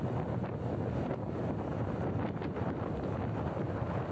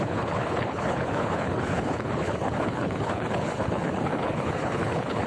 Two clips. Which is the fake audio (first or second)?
second